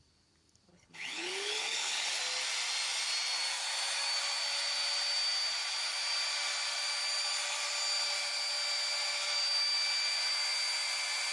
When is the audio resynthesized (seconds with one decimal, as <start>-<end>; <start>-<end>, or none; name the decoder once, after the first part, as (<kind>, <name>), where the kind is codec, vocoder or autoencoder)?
0.7-2.2 (codec, HILCodec)